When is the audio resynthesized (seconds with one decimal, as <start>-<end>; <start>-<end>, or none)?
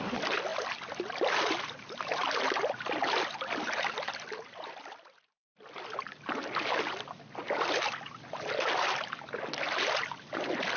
none